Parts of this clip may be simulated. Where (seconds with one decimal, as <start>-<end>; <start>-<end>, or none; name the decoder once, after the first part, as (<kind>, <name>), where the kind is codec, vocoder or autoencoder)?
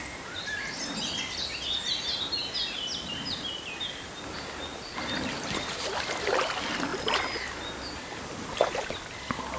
none